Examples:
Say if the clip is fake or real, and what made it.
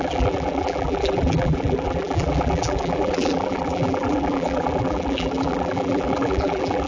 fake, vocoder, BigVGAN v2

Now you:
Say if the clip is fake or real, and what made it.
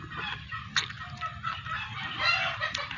real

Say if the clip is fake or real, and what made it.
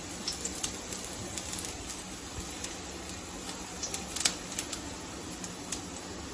real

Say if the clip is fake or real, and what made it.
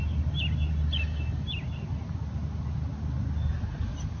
real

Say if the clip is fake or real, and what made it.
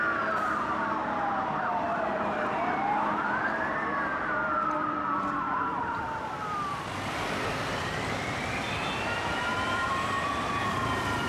fake, vocoder, BigVGAN v2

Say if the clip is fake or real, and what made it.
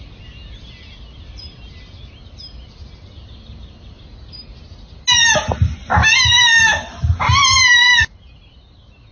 real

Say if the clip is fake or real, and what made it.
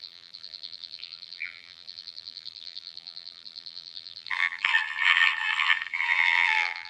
fake, vocoder, BigVGAN v2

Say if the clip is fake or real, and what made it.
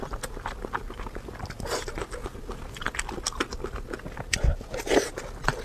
real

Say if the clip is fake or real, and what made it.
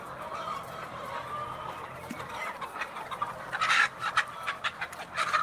real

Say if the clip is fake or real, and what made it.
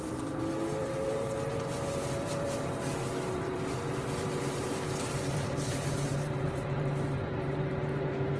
fake, vocoder, BigVGAN v2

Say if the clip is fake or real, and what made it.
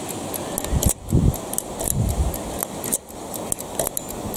real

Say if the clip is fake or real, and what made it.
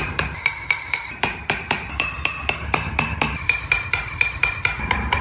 fake, vocoder, BigVGAN v2